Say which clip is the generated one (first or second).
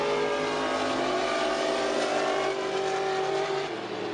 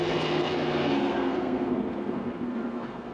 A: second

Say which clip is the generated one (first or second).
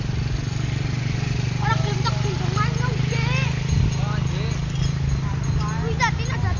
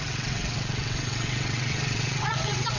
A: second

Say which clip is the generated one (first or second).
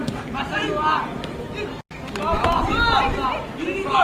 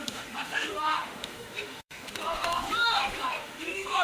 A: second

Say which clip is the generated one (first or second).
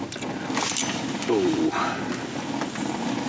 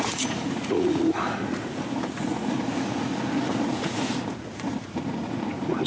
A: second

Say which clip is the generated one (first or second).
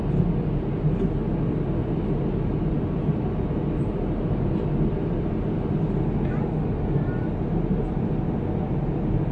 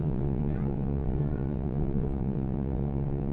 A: second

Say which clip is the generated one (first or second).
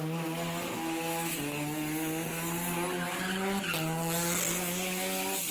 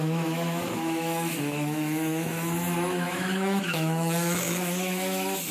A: second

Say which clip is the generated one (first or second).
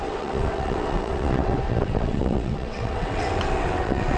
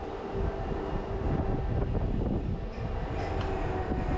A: first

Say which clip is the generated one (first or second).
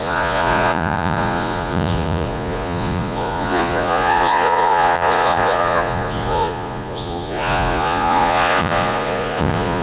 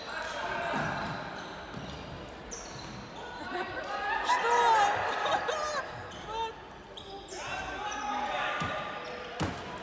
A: first